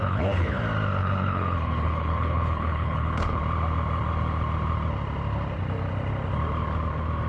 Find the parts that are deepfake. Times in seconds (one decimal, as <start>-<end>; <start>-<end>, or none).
0.0-0.6; 1.0-3.4